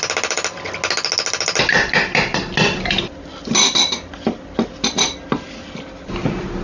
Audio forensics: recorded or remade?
recorded